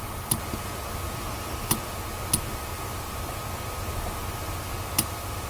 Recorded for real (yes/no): yes